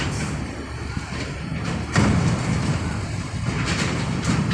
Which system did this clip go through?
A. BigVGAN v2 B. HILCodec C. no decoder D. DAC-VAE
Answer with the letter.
A